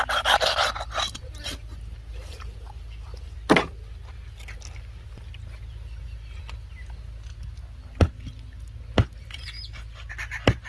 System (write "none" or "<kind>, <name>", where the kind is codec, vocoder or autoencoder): none